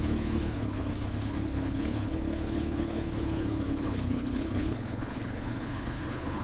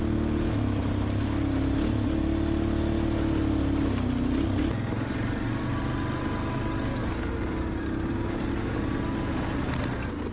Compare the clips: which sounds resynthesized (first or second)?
first